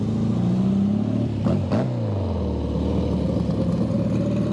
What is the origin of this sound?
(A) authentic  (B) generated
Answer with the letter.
A